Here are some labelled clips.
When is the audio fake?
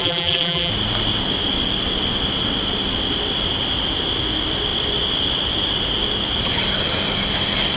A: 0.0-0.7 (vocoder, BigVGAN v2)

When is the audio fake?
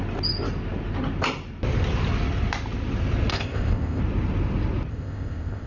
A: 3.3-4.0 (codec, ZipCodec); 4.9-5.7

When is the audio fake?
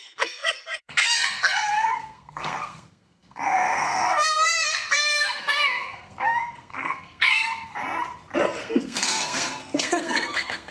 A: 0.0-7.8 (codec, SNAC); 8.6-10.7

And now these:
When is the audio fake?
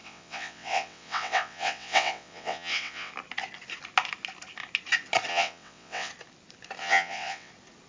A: 0.0-3.1 (vocoder, WaveNeXt); 5.3-6.1; 6.8-7.5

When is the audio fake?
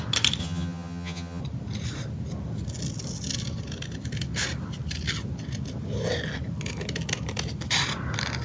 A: 0.4-1.4 (vocoder, HiFi-GAN)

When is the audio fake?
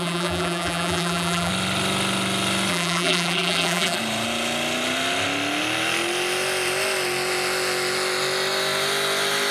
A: 0.0-1.5 (vocoder, BigVGAN v2); 2.7-4.0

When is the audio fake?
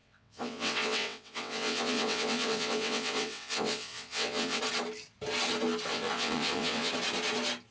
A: 0.0-4.6 (vocoder, WaveNeXt); 5.9-6.9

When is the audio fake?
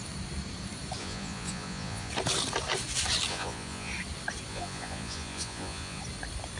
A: 1.0-2.1 (vocoder, Vocos); 3.3-3.9; 4.5-6.0